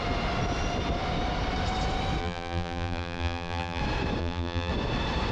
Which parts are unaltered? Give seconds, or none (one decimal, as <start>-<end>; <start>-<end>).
0.0-2.2; 3.8-4.2; 4.7-5.3